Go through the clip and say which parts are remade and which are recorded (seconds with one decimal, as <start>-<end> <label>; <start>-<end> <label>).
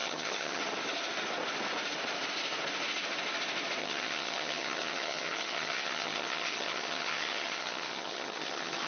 0.0-0.6 remade; 0.6-3.8 recorded; 3.8-8.9 remade